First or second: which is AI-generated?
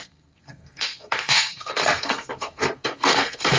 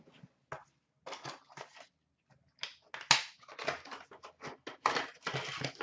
first